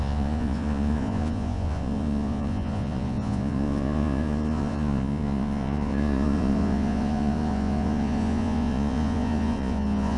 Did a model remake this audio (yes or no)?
yes